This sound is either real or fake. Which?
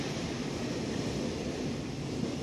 real